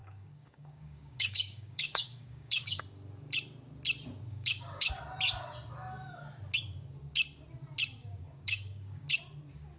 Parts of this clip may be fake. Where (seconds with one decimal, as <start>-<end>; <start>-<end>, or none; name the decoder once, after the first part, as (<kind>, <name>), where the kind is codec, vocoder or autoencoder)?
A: 0.0-2.8 (codec, DAC); 4.3-4.9; 8.0-9.1